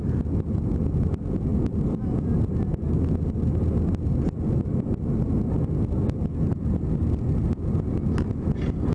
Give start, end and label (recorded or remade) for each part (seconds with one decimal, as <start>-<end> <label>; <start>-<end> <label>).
0.0-8.9 recorded